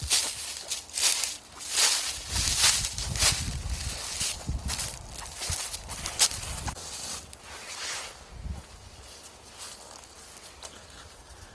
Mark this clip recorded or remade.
recorded